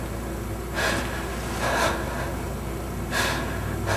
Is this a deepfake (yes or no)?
no